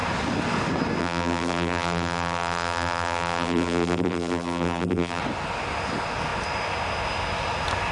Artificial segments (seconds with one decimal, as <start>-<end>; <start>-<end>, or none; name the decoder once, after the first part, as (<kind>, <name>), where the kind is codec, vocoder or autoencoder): 1.0-5.2 (vocoder, BigVGAN v2)